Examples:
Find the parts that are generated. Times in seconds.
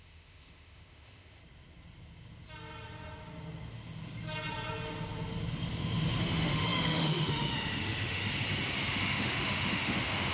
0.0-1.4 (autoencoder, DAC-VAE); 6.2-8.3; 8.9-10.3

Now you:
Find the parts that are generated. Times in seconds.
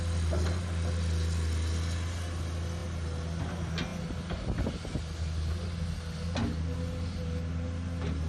none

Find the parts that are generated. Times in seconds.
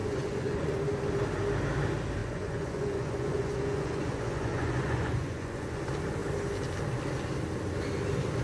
0.0-0.8 (vocoder, Vocos); 2.2-5.8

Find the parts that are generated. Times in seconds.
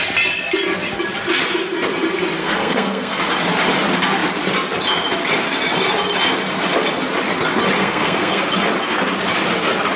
2.4-3.2 (codec, SNAC); 7.8-8.4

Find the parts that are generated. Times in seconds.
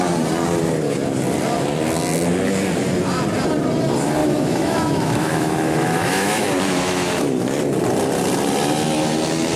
4.2-7.2 (autoencoder, DAC-VAE)